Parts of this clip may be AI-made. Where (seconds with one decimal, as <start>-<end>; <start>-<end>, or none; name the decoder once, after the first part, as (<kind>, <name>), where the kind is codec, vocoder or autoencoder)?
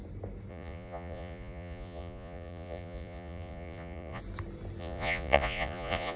0.5-4.2 (vocoder, Vocos); 4.8-6.2